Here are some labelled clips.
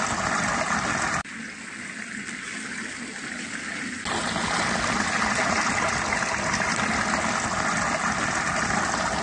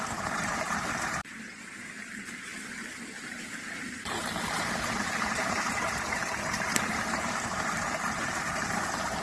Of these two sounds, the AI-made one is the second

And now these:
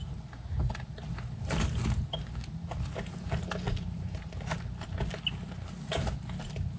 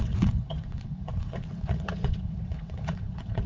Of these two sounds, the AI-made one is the second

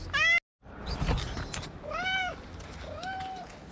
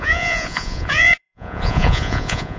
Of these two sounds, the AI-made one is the second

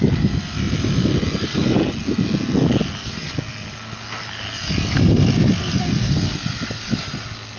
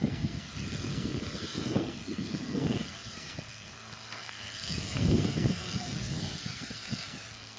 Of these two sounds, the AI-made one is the second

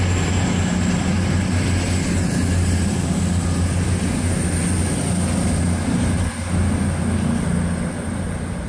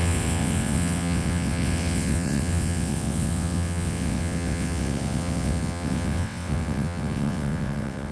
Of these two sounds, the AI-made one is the second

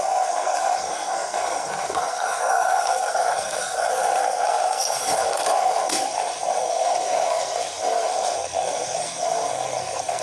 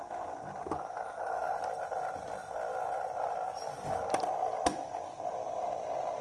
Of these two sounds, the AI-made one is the first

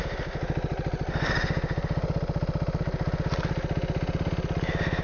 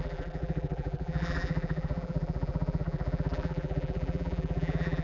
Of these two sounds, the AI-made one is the second